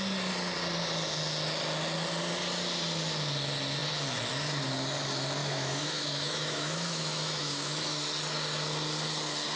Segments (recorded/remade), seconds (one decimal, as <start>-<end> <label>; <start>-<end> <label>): 0.0-5.4 recorded; 5.4-8.0 remade; 8.0-9.6 recorded